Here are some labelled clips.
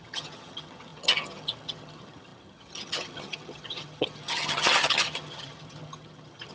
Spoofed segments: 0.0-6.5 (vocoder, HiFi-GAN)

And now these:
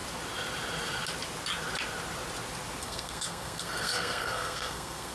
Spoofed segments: 2.8-5.1 (codec, SNAC)

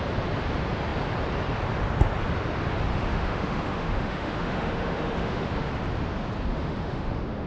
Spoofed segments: 2.9-5.7 (autoencoder, DAC-VAE); 6.5-7.5

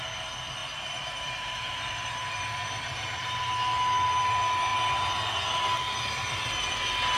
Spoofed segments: 0.6-3.5 (vocoder, BigVGAN v2)

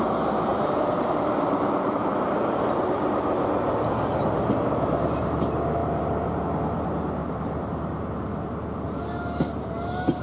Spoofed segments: 0.5-2.9 (vocoder, BigVGAN v2); 5.8-6.4; 7.2-9.0

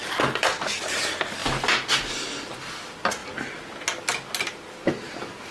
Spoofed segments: none

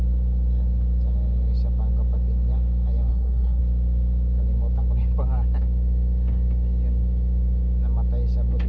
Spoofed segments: 3.1-3.6 (codec, SNAC)

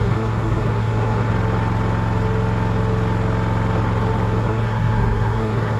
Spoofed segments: 0.0-1.3 (codec, SNAC); 4.4-5.8